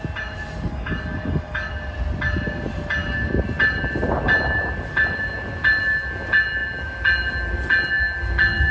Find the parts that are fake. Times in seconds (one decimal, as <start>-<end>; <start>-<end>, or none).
0.7-1.7